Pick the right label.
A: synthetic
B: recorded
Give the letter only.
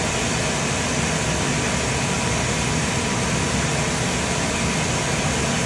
B